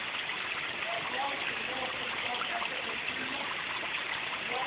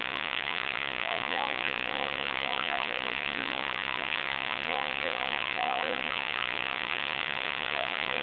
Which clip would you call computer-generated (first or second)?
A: second